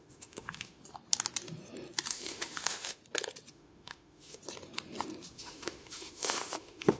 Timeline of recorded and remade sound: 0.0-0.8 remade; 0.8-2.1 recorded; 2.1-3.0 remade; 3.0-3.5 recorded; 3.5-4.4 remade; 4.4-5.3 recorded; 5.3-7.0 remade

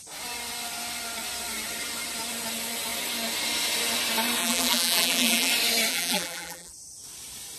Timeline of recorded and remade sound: 0.0-4.4 recorded; 4.4-5.5 remade; 5.5-5.9 recorded; 5.9-6.7 remade; 6.7-7.6 recorded

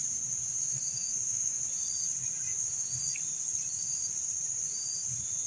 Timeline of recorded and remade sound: 0.0-0.7 recorded; 0.7-1.6 remade; 1.6-5.5 recorded

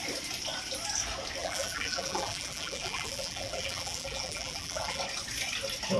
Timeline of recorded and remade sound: 0.0-1.4 recorded; 1.4-5.0 remade; 5.0-6.0 recorded

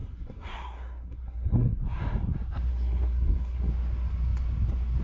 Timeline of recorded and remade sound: 0.0-1.8 remade; 1.8-2.7 recorded; 2.7-3.7 remade; 3.7-5.0 recorded

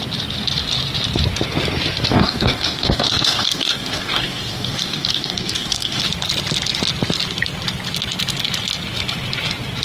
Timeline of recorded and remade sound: 0.0-2.1 recorded; 2.1-6.0 remade; 6.0-9.8 recorded

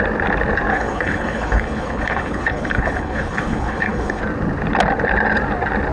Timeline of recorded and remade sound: 0.0-0.7 recorded; 0.7-4.2 remade; 4.2-5.9 recorded

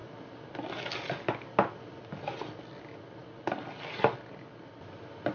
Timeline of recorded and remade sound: 0.0-5.3 recorded